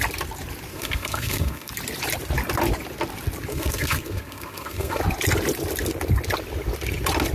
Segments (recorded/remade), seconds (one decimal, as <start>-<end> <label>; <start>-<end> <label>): 0.0-0.7 recorded; 0.7-1.7 remade; 1.7-3.5 recorded; 3.5-5.0 remade; 5.0-7.3 recorded